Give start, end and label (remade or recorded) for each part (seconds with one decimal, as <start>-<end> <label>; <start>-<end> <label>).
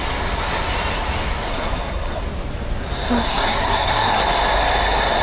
0.0-1.5 recorded; 1.5-2.2 remade; 2.2-3.3 recorded; 3.3-4.2 remade; 4.2-5.2 recorded